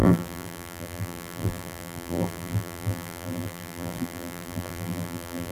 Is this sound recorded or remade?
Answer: remade